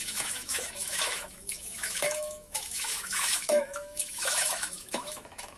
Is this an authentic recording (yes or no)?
no